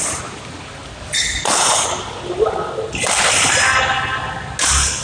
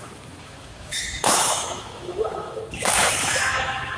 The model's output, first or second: second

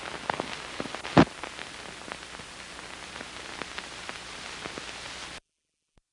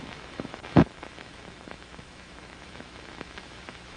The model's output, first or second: second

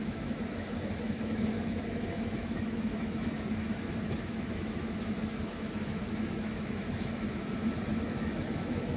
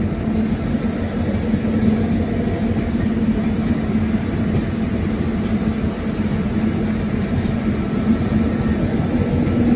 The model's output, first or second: first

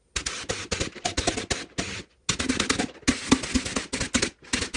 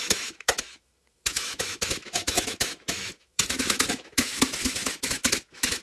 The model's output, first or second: second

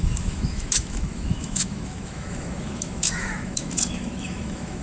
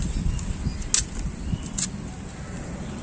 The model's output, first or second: first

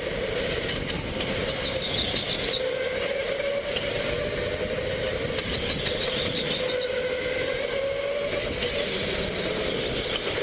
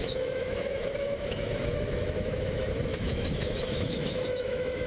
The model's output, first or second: second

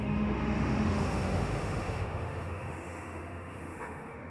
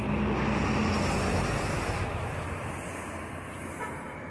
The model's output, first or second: first